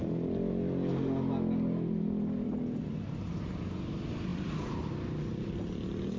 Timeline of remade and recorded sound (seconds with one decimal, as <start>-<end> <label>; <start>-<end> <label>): 0.0-4.3 recorded; 4.3-4.9 remade; 4.9-6.2 recorded